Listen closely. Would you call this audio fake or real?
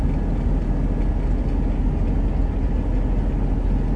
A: real